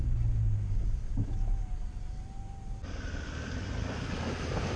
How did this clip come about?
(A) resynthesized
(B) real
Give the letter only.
B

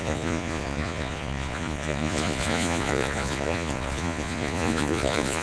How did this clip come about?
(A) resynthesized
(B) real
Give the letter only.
A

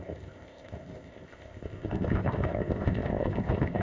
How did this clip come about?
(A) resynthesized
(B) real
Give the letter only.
A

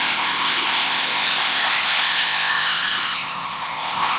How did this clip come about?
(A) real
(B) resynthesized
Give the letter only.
B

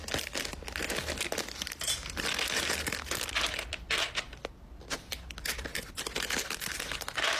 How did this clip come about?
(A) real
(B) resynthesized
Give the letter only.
A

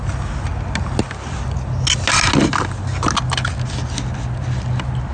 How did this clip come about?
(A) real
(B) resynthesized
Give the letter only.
A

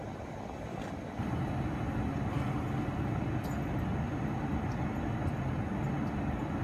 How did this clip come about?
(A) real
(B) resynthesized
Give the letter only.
A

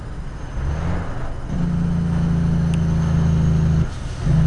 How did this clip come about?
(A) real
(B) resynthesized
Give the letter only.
A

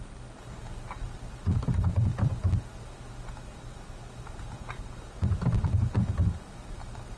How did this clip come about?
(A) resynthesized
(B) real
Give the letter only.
B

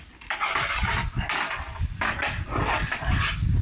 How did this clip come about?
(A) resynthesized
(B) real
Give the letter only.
B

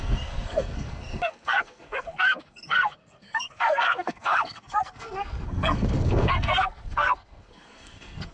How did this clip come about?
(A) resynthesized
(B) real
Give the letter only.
A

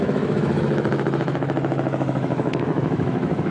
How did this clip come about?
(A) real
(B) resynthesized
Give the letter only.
B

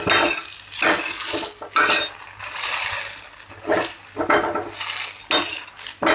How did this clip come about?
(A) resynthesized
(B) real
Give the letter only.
B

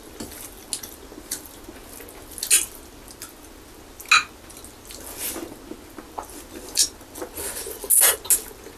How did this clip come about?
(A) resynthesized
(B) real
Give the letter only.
B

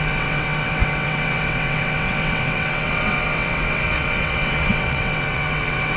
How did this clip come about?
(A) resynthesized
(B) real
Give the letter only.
A